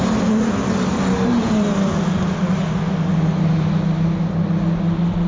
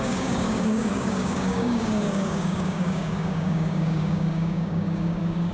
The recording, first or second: first